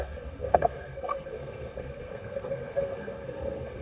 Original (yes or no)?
no